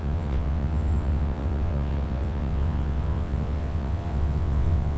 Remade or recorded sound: remade